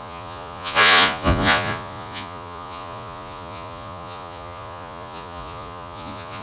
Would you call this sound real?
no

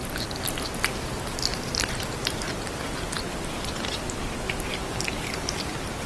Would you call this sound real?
yes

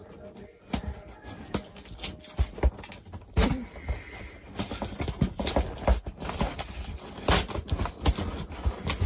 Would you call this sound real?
yes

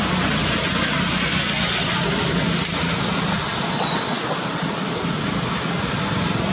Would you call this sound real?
yes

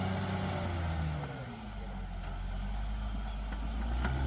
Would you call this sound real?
yes